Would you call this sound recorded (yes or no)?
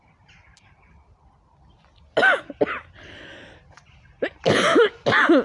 yes